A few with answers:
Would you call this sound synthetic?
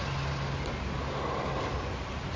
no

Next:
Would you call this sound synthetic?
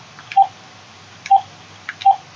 no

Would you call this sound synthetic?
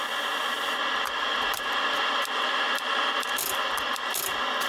no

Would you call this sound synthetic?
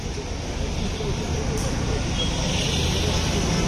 no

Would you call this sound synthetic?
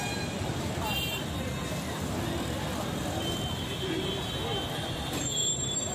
no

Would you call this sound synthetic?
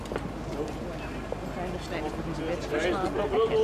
no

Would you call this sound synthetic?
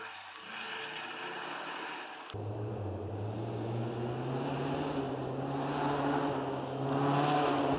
no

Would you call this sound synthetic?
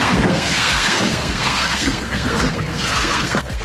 yes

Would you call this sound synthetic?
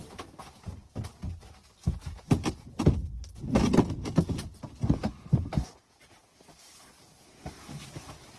no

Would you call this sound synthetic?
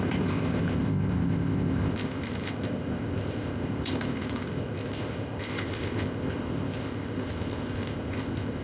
yes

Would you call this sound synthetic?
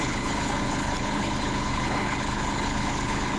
yes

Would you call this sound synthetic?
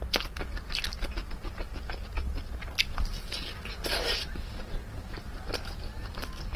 no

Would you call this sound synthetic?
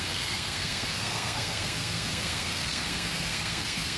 yes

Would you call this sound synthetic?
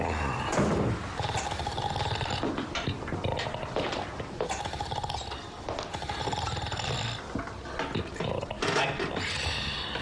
no